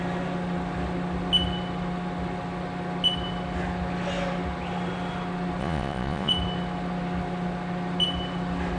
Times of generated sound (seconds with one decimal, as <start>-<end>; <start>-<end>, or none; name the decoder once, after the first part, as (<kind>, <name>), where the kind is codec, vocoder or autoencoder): 5.6-6.3 (vocoder, Vocos)